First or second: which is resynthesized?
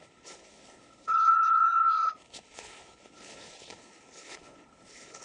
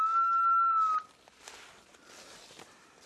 first